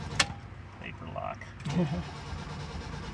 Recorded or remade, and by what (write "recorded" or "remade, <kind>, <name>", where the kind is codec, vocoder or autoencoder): recorded